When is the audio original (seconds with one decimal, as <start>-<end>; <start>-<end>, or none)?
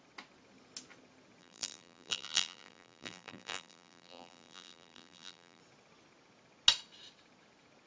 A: 0.0-1.4; 5.6-7.9